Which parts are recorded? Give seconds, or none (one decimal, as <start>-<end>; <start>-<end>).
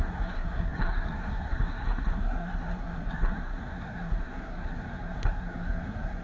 none